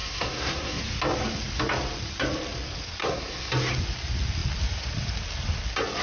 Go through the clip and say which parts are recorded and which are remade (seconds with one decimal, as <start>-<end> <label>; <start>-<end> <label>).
0.0-0.8 remade; 0.8-3.0 recorded; 3.0-3.5 remade; 3.5-6.0 recorded